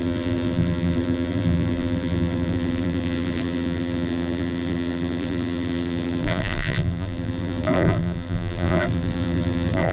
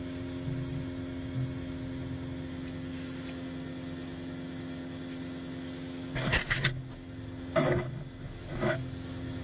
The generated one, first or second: first